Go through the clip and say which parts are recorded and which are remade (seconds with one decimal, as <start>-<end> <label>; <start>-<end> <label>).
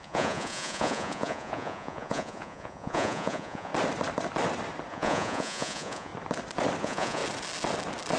0.0-3.7 remade; 3.7-4.9 recorded; 4.9-6.1 remade; 6.1-6.8 recorded; 6.8-7.2 remade; 7.2-8.2 recorded